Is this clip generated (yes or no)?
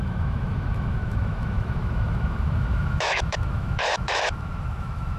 yes